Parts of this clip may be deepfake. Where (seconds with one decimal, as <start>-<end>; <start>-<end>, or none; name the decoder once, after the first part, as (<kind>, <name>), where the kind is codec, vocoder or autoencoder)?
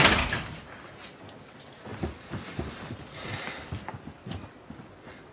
none